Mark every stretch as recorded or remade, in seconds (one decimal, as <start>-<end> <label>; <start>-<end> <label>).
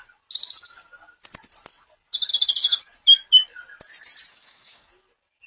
0.0-4.3 recorded; 4.3-4.9 remade; 4.9-5.5 recorded